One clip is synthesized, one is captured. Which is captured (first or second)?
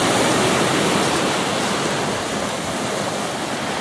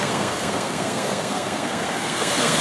first